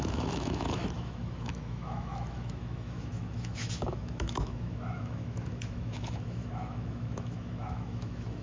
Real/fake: fake